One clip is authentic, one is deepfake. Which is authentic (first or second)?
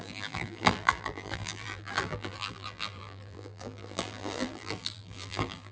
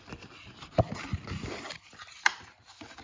second